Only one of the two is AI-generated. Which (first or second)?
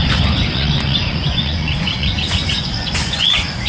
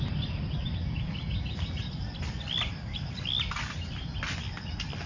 first